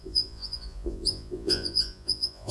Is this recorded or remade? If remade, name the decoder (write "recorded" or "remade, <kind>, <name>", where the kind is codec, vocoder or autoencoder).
remade, vocoder, Vocos